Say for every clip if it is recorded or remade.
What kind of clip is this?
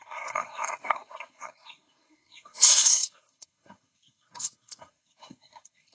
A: remade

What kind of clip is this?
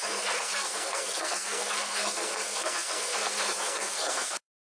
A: remade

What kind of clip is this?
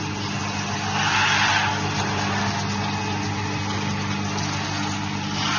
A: recorded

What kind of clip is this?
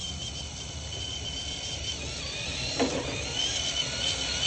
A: recorded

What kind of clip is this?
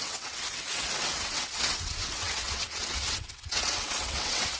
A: remade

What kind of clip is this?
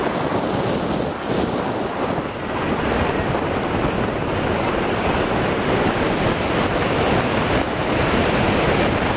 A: recorded